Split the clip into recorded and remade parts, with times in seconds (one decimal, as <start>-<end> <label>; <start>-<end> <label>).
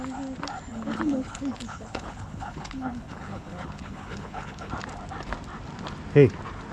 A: 0.0-0.7 recorded; 0.7-4.7 remade; 4.7-6.7 recorded